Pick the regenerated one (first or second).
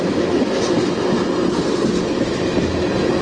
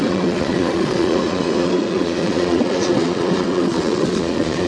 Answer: second